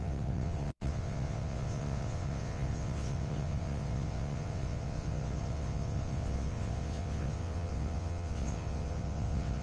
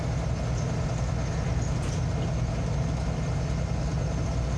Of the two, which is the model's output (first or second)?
first